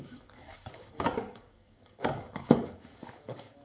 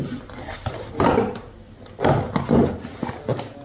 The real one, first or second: second